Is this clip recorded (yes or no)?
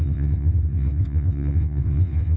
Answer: no